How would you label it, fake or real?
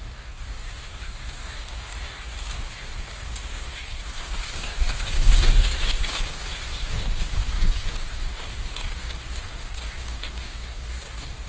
fake